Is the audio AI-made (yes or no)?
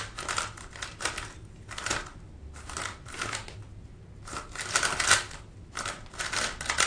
no